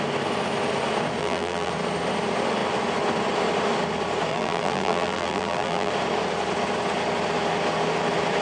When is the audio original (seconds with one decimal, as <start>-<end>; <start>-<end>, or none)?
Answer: 0.0-1.2; 1.7-4.3; 5.9-8.4